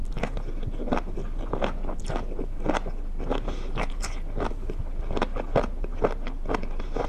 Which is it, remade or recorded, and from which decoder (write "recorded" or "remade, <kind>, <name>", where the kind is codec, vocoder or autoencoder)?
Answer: recorded